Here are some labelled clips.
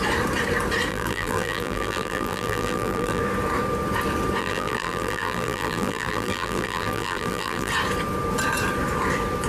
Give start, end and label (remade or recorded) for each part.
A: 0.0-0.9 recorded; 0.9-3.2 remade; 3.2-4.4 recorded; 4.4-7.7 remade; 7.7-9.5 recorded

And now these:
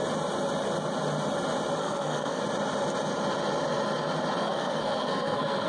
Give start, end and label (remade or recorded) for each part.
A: 0.0-1.8 recorded; 1.8-2.4 remade; 2.4-4.4 recorded; 4.4-5.7 remade

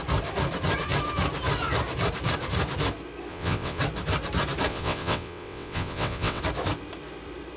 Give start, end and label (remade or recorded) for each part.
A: 0.0-3.3 recorded; 3.3-3.8 remade; 3.8-4.7 recorded; 4.7-6.4 remade; 6.4-7.6 recorded

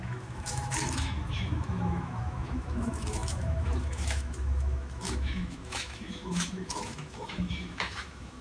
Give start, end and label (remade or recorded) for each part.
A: 0.0-8.4 remade